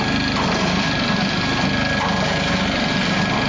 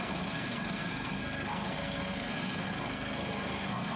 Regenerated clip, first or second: second